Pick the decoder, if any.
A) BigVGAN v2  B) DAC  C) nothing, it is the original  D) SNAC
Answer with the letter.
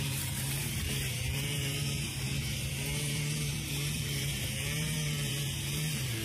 A